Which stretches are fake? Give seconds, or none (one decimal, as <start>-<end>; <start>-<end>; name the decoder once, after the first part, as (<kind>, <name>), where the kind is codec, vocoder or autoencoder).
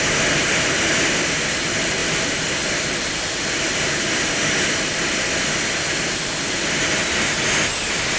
none